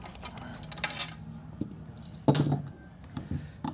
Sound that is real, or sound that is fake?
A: real